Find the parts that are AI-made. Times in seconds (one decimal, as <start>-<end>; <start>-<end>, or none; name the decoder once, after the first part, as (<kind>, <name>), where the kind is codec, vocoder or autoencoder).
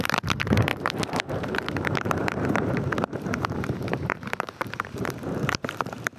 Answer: 0.0-6.2 (vocoder, BigVGAN v2)